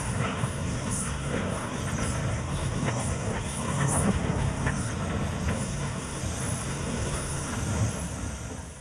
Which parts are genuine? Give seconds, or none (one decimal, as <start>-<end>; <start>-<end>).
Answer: 1.8-2.3; 4.9-5.5; 6.2-6.7; 7.5-8.8

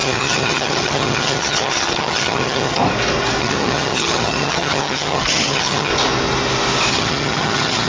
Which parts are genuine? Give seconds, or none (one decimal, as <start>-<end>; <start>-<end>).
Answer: 2.8-3.4; 5.9-6.9

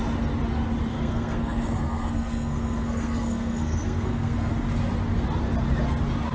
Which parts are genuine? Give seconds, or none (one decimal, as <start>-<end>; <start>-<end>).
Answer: 0.0-0.9; 4.5-6.3

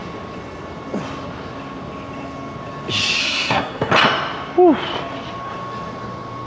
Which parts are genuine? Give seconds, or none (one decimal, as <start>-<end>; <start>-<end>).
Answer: 0.0-3.2; 3.9-6.5

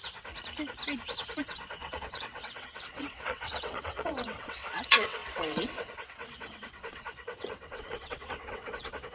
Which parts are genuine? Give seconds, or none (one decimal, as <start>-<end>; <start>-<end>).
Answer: 0.0-1.4

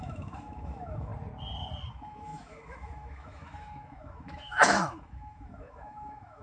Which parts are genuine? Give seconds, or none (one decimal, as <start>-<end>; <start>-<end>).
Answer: 1.1-1.9